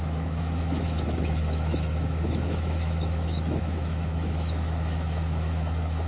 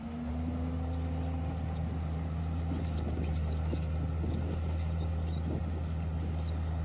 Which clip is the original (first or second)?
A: second